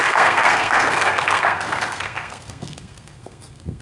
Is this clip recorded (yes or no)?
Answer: no